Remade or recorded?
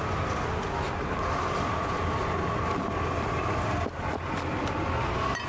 recorded